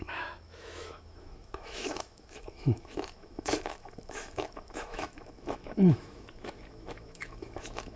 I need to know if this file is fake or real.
fake